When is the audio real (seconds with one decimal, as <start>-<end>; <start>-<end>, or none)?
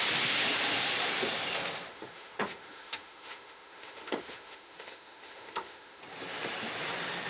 0.0-1.9; 6.0-7.3